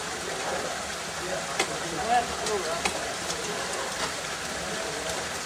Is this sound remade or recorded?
recorded